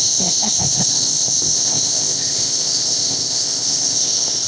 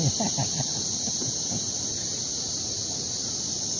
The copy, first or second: first